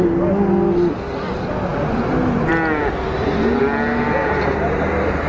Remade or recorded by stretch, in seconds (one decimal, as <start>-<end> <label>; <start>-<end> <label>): 0.0-4.2 recorded; 4.2-5.3 remade